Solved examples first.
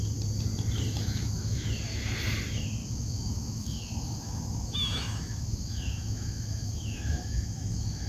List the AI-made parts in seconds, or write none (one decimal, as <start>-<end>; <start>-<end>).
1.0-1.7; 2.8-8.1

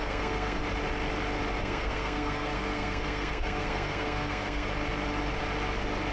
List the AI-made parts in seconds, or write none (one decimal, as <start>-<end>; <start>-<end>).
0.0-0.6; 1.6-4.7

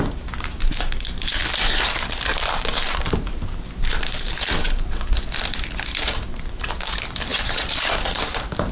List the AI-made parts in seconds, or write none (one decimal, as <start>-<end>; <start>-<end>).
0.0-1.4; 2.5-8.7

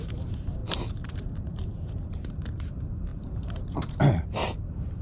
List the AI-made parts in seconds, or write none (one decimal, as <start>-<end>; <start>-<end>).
0.0-5.0

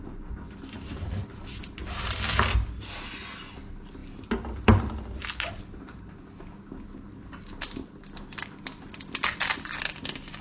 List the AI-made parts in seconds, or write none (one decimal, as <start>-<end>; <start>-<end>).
none

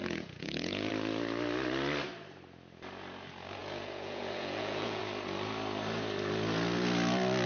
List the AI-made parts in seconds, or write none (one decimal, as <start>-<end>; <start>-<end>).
0.0-0.9; 3.6-5.0